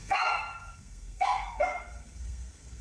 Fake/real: fake